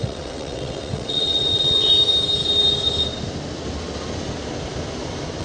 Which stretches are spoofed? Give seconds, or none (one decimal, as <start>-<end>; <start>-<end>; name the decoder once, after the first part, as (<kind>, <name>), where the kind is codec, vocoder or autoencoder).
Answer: 0.0-1.9 (vocoder, WaveNeXt)